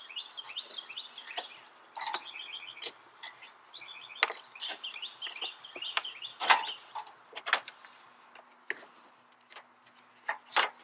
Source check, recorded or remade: recorded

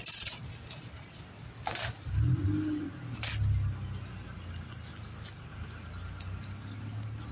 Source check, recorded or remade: recorded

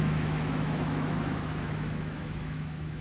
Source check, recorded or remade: remade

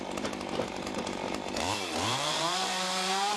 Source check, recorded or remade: remade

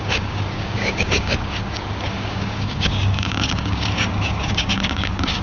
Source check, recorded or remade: remade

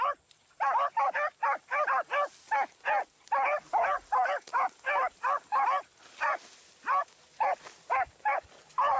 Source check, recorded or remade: recorded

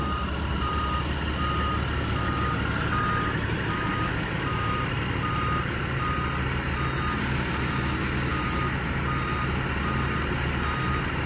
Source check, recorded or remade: recorded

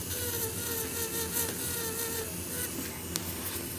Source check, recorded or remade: recorded